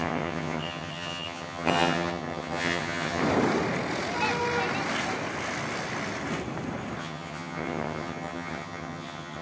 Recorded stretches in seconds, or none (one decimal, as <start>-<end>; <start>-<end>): 3.2-7.0